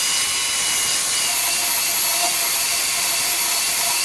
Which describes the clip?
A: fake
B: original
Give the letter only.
B